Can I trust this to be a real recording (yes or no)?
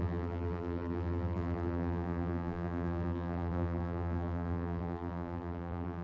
no